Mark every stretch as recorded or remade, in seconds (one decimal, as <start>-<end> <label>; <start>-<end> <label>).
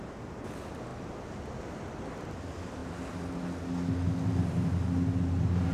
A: 0.0-5.7 recorded